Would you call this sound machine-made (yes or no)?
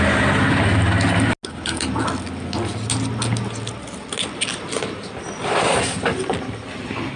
no